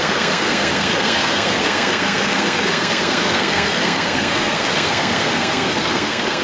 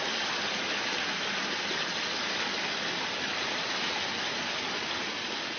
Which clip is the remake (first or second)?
first